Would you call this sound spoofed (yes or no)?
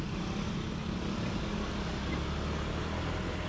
no